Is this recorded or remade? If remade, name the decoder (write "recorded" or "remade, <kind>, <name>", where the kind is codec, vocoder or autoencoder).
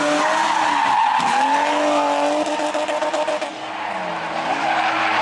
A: recorded